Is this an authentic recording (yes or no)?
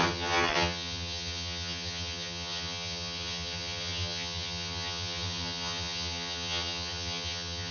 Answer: no